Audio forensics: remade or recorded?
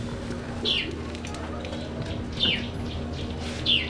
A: recorded